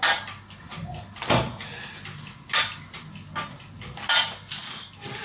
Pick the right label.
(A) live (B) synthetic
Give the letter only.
A